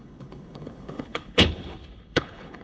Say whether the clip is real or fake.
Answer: fake